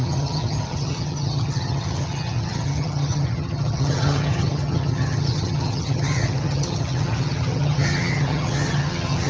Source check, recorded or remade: remade